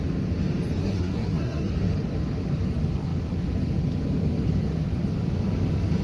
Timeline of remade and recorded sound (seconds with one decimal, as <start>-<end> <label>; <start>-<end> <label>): 0.0-0.8 recorded; 0.8-1.7 remade; 1.7-6.0 recorded